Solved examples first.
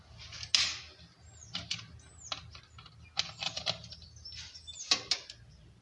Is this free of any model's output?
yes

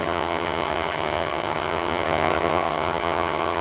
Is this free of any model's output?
no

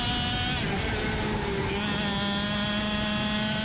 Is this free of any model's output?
yes